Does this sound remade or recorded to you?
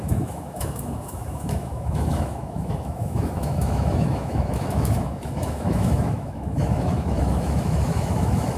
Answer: remade